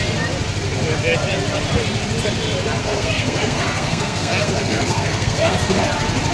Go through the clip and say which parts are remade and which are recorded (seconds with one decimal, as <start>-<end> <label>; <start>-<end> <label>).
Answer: 0.0-2.8 recorded; 2.8-5.8 remade; 5.8-6.3 recorded